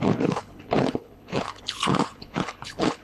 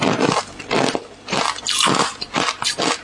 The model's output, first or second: first